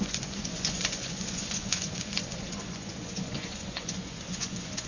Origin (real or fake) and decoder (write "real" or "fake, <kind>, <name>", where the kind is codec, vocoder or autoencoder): fake, vocoder, Vocos